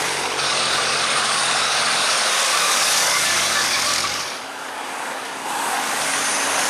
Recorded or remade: remade